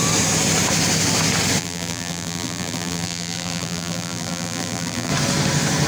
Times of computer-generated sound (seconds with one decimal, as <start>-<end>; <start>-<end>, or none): 1.6-5.1